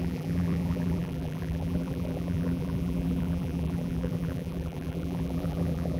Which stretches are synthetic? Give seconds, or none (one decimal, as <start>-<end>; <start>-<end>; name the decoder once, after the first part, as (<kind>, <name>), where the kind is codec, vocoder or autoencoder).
0.0-6.0 (vocoder, BigVGAN v2)